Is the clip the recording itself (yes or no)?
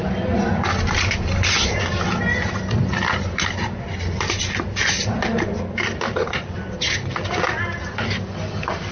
yes